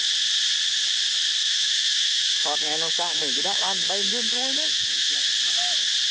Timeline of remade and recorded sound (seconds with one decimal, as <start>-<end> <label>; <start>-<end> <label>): 0.0-1.4 recorded; 1.4-5.1 remade; 5.1-6.1 recorded